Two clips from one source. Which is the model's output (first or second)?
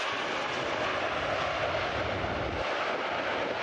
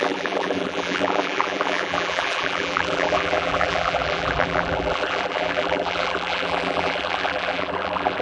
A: second